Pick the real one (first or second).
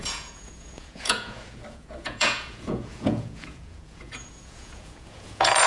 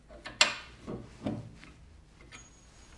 second